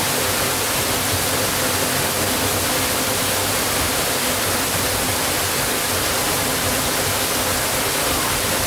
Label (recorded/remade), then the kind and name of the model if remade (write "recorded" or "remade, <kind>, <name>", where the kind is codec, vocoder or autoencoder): recorded